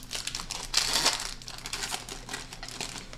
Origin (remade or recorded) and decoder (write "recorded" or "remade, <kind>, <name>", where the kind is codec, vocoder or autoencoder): recorded